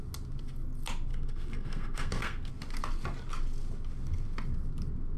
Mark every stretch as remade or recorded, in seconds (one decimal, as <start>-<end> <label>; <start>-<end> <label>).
0.0-1.1 recorded; 1.1-2.5 remade; 2.5-5.2 recorded